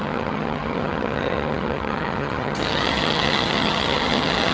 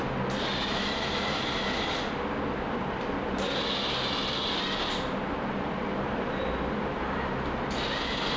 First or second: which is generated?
first